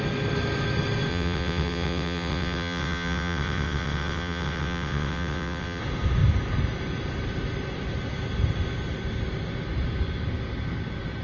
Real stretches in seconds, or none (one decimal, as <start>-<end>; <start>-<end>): 0.0-1.1; 5.8-11.2